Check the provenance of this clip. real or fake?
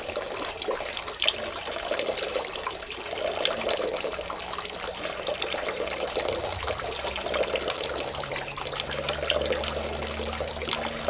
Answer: real